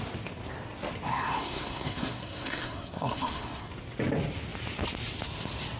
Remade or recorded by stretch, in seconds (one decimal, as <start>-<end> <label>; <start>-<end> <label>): 0.0-1.1 recorded; 1.1-3.7 remade; 3.7-5.8 recorded